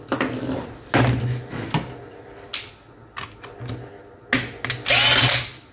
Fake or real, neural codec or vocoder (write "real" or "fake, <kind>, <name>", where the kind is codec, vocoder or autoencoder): real